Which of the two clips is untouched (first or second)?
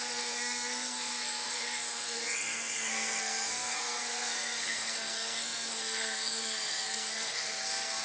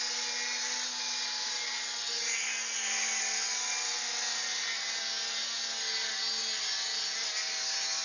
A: second